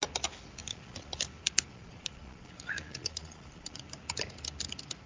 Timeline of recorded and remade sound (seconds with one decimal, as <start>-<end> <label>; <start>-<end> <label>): 0.0-0.6 recorded; 0.6-1.2 remade; 1.2-1.7 recorded; 1.7-3.8 remade; 3.8-5.1 recorded